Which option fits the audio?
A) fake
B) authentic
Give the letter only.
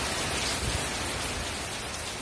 B